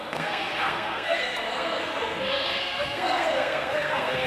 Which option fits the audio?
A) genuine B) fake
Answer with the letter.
B